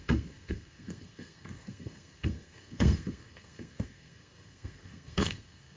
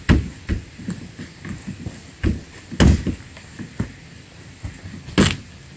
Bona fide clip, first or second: second